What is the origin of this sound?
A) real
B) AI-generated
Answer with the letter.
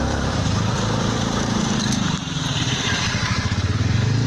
B